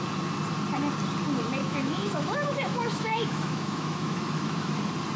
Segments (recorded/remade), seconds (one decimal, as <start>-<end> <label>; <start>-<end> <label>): 0.0-1.6 recorded; 1.6-4.7 remade; 4.7-5.2 recorded